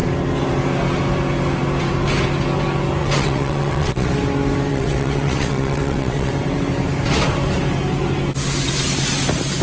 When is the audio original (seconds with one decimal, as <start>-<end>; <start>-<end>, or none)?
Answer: 0.0-3.0; 4.1-4.7; 6.3-9.6